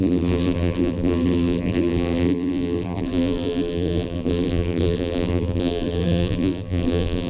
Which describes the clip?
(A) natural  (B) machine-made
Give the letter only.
B